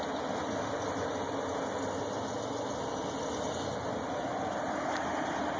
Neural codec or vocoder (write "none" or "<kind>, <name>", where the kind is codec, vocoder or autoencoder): none